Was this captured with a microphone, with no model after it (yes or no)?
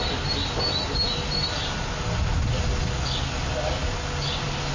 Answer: yes